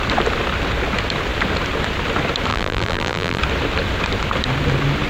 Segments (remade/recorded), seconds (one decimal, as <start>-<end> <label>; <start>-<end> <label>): 0.0-2.5 recorded; 2.5-3.4 remade; 3.4-5.1 recorded